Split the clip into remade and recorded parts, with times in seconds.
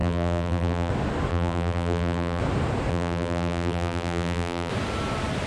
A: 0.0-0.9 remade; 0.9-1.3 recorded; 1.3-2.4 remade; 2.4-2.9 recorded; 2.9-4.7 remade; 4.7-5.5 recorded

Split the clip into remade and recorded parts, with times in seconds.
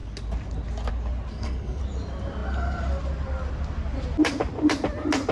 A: 0.0-1.3 recorded; 1.3-1.8 remade; 1.8-5.3 recorded